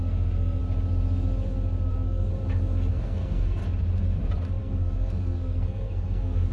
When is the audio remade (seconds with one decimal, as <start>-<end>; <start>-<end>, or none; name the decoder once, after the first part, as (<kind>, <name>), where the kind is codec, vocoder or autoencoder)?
0.0-0.6 (codec, SNAC); 1.9-2.3; 2.9-3.6; 4.6-6.5